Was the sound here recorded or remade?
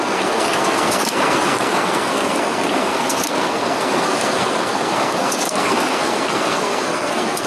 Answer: remade